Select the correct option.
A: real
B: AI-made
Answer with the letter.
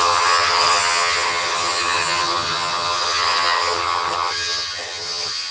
B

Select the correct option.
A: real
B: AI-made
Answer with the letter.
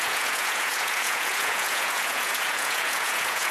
B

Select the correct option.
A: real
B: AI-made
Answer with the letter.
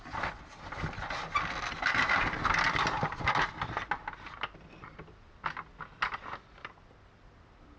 A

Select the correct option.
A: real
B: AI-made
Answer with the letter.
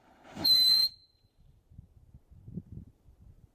B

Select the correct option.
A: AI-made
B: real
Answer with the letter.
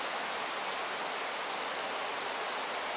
B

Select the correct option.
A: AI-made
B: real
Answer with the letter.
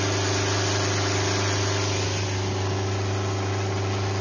B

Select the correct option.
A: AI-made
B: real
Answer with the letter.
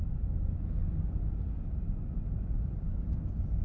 B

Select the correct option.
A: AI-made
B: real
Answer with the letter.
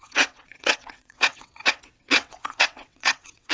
A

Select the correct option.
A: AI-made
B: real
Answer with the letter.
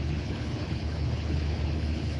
A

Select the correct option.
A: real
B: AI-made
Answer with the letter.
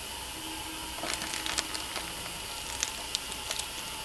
A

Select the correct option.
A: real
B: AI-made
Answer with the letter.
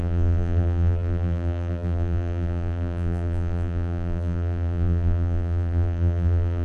B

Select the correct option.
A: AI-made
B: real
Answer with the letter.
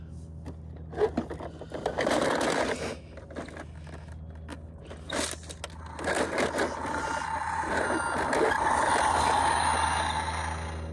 B